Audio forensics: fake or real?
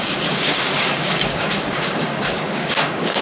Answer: fake